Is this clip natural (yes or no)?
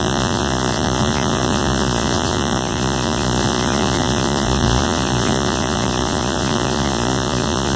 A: no